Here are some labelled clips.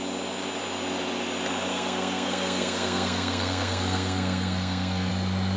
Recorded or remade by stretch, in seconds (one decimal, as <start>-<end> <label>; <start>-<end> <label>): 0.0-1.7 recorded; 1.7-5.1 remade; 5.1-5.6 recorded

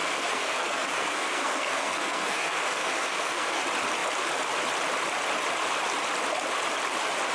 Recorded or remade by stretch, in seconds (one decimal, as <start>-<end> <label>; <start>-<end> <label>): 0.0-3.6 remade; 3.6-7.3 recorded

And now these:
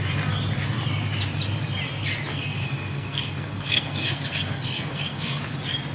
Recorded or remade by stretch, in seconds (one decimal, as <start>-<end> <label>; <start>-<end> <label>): 0.0-2.3 recorded; 2.3-5.4 remade; 5.4-5.9 recorded

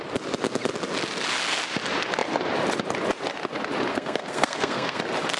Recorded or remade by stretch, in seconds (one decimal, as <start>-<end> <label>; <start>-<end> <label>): 0.0-3.9 recorded; 3.9-5.0 remade; 5.0-5.4 recorded